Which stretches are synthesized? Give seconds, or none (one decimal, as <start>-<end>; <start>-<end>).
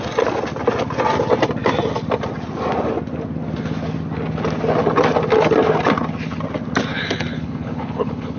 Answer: 6.9-8.4